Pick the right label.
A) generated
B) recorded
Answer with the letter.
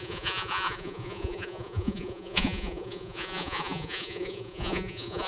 A